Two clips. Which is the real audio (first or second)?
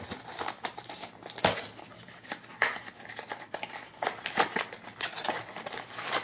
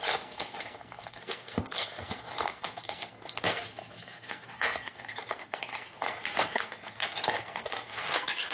first